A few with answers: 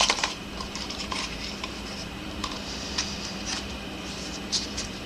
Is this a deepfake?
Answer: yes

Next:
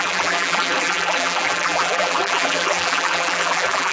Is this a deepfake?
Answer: yes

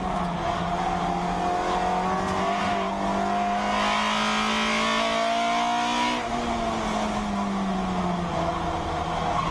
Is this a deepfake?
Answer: no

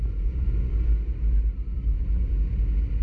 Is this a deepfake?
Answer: no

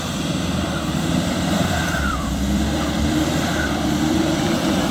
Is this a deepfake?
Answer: yes